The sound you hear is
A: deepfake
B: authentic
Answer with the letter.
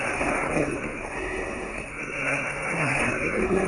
A